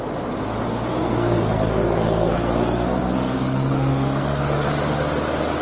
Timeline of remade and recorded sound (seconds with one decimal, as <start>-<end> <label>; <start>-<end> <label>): 0.0-1.0 recorded; 1.0-4.4 remade; 4.4-5.6 recorded